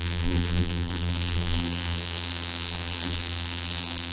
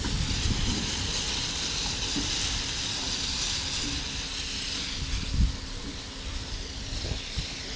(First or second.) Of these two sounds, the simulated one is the first